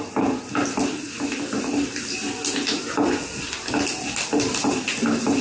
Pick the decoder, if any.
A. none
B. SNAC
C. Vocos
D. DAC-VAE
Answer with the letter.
A